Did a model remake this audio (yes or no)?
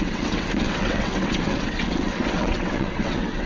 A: yes